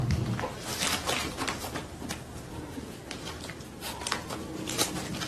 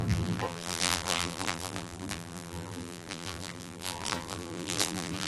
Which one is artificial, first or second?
second